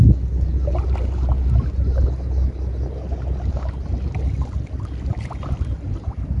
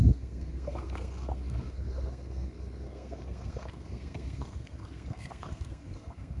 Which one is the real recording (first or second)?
first